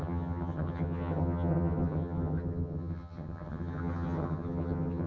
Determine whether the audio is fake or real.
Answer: fake